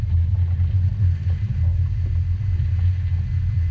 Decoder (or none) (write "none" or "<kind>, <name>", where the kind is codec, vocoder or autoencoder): none